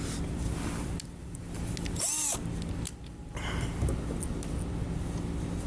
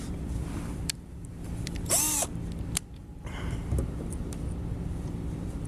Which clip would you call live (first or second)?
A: first